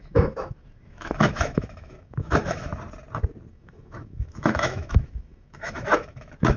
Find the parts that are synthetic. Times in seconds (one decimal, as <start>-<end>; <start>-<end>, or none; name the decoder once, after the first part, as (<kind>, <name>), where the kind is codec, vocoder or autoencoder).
0.0-2.7 (autoencoder, DAC-VAE); 3.5-6.6